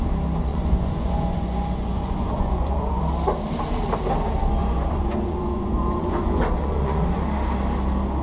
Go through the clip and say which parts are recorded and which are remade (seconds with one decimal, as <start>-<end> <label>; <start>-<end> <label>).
0.0-0.5 recorded; 0.5-3.0 remade; 3.0-4.6 recorded; 4.6-7.2 remade; 7.2-8.2 recorded